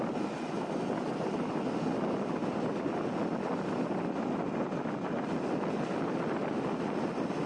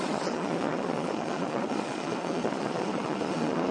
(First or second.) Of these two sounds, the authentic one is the first